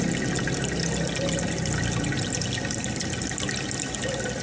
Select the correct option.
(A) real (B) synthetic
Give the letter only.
A